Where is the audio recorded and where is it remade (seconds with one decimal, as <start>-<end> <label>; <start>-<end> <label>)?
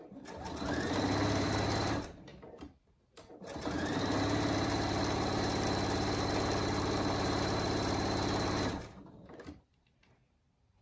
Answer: 0.0-10.8 remade